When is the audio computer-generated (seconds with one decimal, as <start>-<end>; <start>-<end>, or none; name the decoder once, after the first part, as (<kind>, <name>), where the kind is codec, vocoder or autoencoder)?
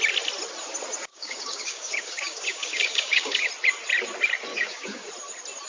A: 1.1-3.5 (codec, DAC); 4.5-5.1